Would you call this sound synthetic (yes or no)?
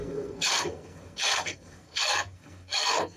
yes